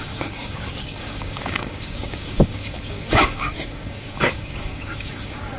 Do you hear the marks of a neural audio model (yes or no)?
yes